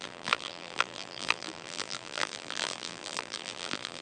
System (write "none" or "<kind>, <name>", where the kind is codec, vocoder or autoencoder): vocoder, BigVGAN v2